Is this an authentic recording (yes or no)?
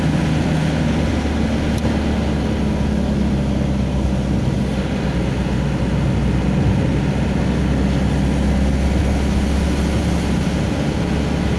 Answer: yes